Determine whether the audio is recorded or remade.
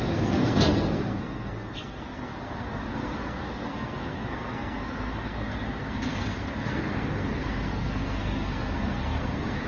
remade